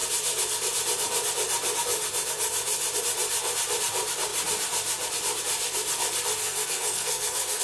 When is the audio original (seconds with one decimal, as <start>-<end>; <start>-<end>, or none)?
0.0-6.4